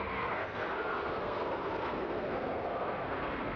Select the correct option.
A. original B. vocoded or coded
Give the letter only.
B